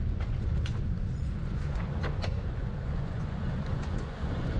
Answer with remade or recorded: remade